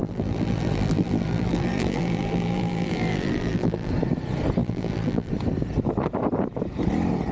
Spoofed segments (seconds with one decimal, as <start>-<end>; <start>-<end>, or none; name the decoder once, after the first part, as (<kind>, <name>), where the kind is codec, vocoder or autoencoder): 0.0-3.9 (vocoder, BigVGAN v2); 4.6-5.3